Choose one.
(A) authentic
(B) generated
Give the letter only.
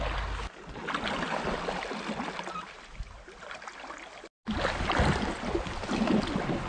A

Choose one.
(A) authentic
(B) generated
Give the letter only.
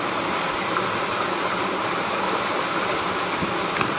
A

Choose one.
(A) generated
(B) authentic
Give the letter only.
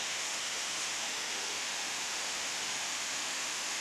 A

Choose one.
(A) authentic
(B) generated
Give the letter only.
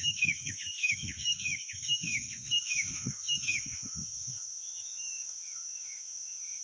B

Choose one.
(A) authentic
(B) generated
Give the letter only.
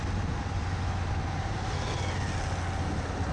A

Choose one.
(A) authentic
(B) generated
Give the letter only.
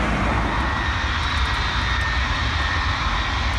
A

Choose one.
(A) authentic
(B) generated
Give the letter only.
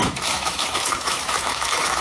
B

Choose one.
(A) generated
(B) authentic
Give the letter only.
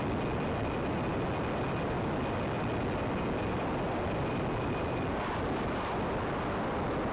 B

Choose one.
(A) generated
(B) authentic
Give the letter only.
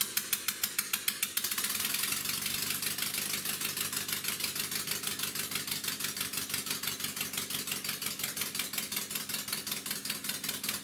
B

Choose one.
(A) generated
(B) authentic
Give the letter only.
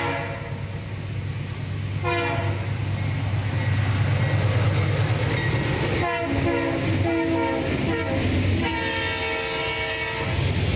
B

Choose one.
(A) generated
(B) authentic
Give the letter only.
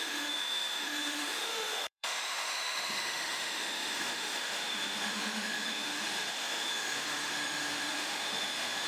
A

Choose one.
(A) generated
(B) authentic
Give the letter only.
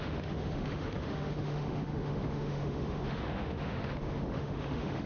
A